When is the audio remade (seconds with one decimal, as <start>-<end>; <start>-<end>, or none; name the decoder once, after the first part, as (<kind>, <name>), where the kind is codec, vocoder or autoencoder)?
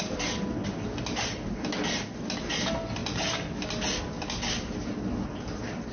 none